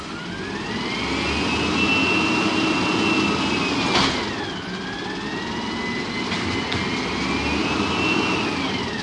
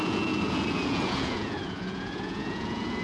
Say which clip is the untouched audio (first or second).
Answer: first